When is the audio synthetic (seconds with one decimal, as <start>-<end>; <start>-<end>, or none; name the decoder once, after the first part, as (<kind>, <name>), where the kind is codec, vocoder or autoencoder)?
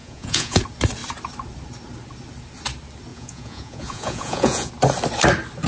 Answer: 0.0-0.6 (vocoder, Vocos); 3.1-4.7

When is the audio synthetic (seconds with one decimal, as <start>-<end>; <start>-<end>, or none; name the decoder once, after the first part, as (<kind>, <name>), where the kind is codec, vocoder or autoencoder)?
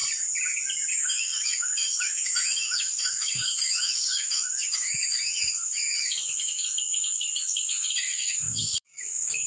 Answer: 0.9-9.5 (autoencoder, DAC-VAE)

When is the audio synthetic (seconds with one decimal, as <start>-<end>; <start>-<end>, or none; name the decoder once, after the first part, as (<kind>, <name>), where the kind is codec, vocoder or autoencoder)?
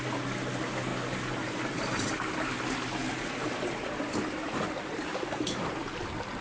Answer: 5.1-5.7 (codec, DAC)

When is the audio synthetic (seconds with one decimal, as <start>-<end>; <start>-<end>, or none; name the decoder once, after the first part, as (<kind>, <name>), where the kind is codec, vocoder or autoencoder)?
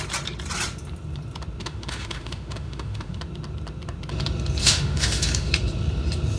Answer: 1.6-3.2 (autoencoder, DAC-VAE); 4.6-5.5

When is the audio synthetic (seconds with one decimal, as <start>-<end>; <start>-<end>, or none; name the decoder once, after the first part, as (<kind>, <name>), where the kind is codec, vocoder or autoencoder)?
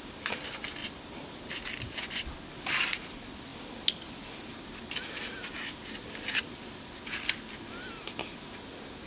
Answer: 0.8-1.5 (vocoder, BigVGAN v2)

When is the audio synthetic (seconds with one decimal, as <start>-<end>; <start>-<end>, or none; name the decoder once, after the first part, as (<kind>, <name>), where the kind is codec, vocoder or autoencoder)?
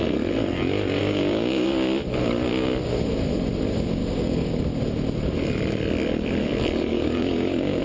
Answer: 1.0-1.7 (codec, DAC); 4.0-4.6; 6.9-7.8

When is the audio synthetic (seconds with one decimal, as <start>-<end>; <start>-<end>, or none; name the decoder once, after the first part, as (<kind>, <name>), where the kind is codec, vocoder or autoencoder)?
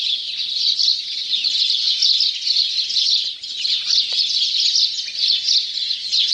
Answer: 0.9-1.4 (vocoder, BigVGAN v2); 2.4-2.9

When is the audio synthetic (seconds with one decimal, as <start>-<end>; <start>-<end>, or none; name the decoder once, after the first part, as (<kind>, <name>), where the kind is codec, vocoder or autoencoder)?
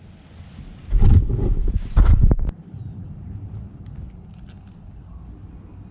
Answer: 1.6-3.1 (vocoder, BigVGAN v2)